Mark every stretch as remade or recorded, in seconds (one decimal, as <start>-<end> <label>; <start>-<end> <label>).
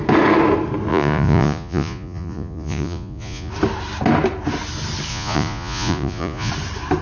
0.0-0.9 recorded; 0.9-3.5 remade; 3.5-5.1 recorded; 5.1-6.5 remade; 6.5-7.0 recorded